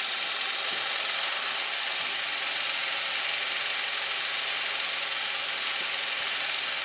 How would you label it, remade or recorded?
recorded